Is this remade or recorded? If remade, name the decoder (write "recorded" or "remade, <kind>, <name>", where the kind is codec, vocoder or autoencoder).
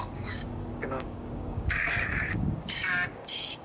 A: remade, codec, DAC